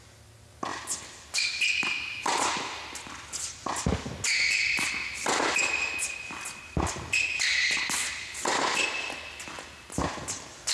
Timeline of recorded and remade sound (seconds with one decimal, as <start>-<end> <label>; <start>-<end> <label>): 0.0-10.7 recorded